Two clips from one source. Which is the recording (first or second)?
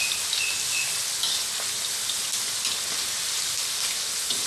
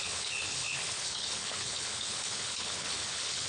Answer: first